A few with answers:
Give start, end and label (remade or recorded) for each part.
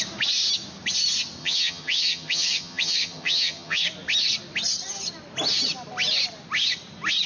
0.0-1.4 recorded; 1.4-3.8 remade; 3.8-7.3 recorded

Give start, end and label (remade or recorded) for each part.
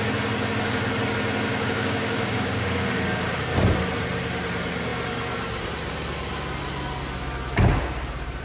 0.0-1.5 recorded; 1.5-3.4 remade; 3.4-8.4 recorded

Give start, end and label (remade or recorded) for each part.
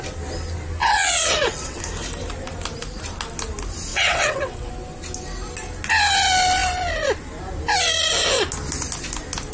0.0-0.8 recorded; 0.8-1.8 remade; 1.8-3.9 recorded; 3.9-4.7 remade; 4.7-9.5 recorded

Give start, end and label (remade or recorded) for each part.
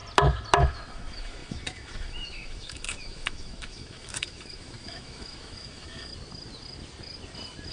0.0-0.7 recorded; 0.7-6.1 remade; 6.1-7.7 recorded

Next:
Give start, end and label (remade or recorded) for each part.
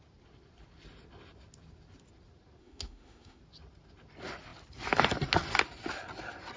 0.0-2.6 recorded; 2.6-3.4 remade; 3.4-6.6 recorded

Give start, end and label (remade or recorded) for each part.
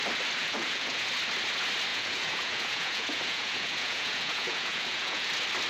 0.0-0.4 recorded; 0.4-1.1 remade; 1.1-1.9 recorded; 1.9-5.3 remade; 5.3-5.7 recorded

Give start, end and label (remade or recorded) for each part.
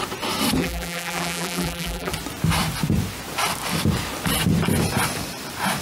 0.0-0.6 recorded; 0.6-2.1 remade; 2.1-5.8 recorded